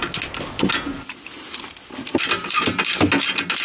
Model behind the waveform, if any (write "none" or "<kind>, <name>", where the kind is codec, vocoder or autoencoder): none